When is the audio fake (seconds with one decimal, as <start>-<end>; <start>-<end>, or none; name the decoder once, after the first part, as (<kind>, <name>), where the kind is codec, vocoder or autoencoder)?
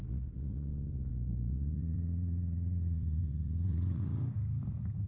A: 0.0-0.7 (vocoder, Vocos); 1.1-4.2